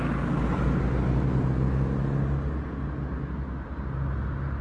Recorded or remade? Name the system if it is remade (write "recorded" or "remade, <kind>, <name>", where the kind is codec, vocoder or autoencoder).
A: recorded